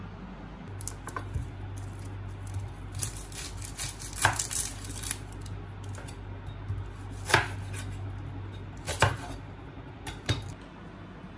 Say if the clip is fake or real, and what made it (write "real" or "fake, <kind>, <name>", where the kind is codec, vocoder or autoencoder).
real